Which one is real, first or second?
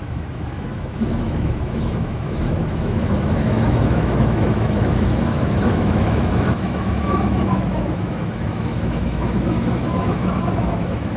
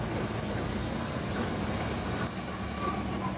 second